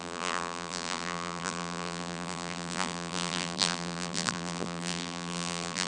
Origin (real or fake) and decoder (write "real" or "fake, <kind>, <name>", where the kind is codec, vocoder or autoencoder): fake, vocoder, BigVGAN v2